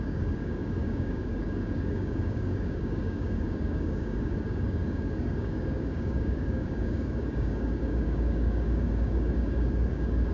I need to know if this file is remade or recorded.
remade